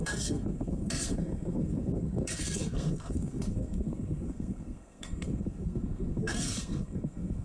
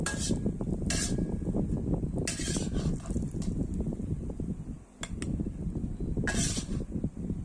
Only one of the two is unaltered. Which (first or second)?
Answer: second